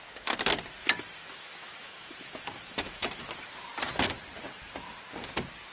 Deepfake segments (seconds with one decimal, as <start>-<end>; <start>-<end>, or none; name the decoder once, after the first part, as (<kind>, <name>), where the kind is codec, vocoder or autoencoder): 0.8-3.2 (autoencoder, DAC-VAE)